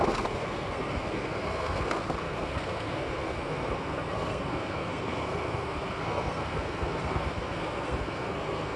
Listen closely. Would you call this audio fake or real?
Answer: fake